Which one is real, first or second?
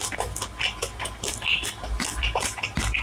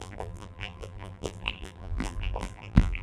first